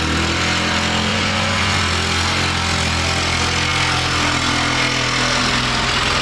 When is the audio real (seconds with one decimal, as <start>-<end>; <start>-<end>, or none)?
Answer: 0.0-1.1; 1.8-6.2